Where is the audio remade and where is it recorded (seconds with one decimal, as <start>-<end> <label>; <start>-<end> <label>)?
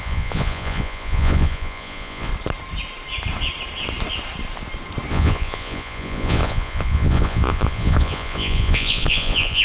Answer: 0.0-2.3 remade; 2.3-5.1 recorded; 5.1-9.6 remade